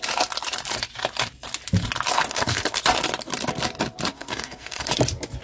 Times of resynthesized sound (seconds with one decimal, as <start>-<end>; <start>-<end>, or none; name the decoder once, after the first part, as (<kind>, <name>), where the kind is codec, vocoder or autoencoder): 2.1-2.8 (codec, SNAC); 4.1-4.9